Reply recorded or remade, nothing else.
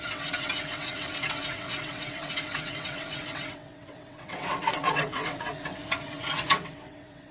remade